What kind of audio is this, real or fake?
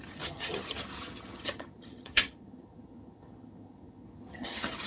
fake